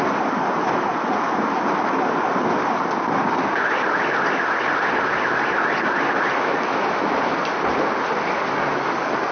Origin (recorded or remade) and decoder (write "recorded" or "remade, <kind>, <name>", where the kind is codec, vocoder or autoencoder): recorded